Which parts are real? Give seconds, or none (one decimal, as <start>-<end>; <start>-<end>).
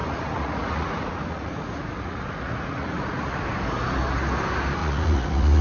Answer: 3.4-4.8